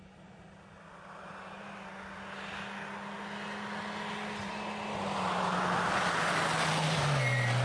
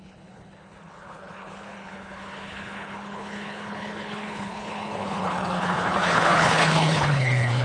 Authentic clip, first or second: first